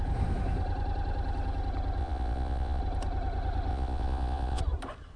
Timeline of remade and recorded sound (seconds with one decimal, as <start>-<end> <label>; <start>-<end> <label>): 0.0-2.0 recorded; 2.0-2.8 remade; 2.8-3.7 recorded; 3.7-4.6 remade; 4.6-5.2 recorded